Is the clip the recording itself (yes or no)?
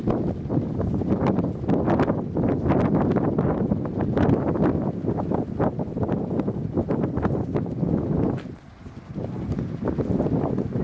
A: yes